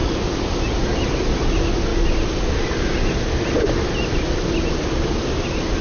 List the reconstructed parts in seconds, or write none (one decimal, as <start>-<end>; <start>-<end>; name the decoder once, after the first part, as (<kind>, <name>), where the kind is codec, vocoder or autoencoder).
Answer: none